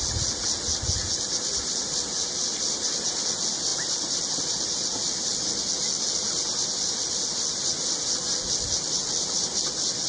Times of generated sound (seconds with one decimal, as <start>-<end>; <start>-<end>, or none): 3.7-4.3